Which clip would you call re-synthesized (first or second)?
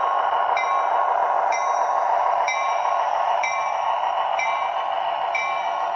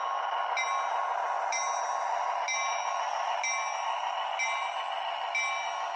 first